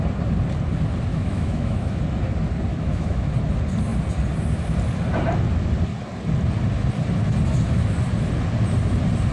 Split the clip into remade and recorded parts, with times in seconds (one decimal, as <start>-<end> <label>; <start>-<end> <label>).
0.0-1.1 recorded; 1.1-2.0 remade; 2.0-2.7 recorded; 2.7-3.3 remade; 3.3-9.3 recorded